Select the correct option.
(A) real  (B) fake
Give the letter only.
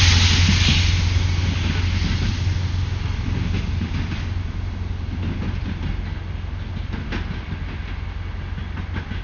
A